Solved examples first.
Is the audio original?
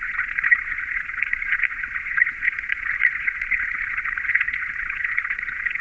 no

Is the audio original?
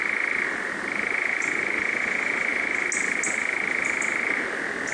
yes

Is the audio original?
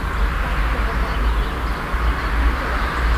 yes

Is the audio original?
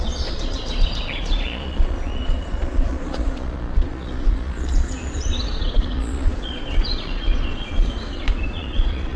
no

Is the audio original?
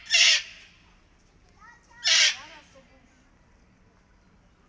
yes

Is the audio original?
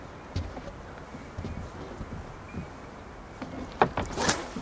yes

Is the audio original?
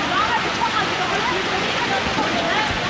no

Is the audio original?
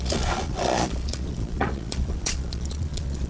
no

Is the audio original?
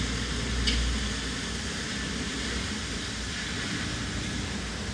yes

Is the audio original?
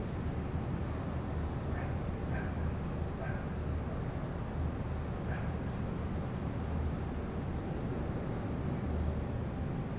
yes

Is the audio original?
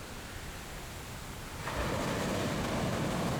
yes